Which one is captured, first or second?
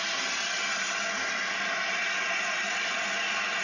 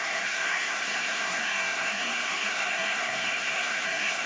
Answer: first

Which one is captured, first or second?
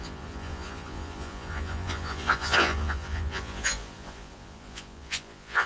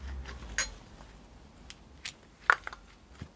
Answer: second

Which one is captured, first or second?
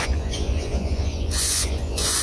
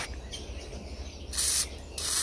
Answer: second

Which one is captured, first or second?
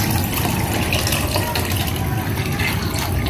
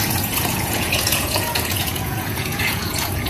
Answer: first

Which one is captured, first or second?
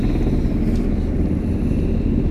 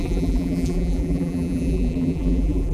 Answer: first